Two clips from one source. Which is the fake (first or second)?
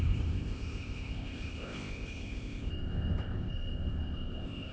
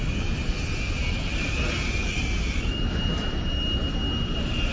first